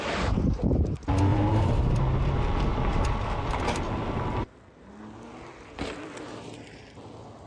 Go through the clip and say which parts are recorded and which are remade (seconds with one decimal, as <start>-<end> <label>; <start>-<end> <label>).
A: 0.0-1.3 recorded; 1.3-2.0 remade; 2.0-7.5 recorded